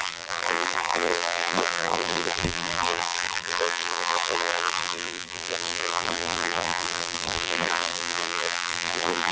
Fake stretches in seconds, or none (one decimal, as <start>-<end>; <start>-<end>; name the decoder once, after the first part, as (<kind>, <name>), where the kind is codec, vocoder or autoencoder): 0.0-9.3 (vocoder, BigVGAN v2)